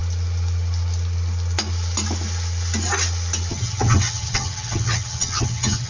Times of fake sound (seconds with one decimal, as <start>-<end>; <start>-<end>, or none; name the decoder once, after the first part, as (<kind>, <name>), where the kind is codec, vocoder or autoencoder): 3.5-5.9 (vocoder, HiFi-GAN)